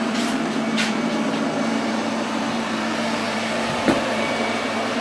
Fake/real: fake